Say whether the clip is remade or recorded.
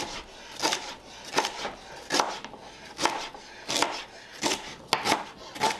recorded